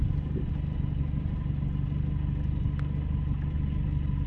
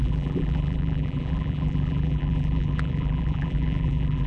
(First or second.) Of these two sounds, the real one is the first